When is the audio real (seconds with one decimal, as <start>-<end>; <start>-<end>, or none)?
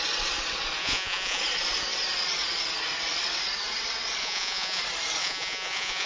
0.0-0.8; 1.4-4.2; 4.8-5.2